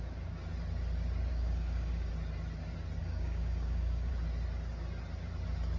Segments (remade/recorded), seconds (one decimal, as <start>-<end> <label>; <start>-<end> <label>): 0.0-1.3 recorded; 1.3-2.1 remade; 2.1-3.0 recorded; 3.0-4.1 remade; 4.1-5.8 recorded